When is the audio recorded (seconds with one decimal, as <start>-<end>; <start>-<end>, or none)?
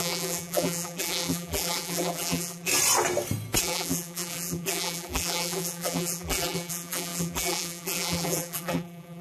2.7-3.6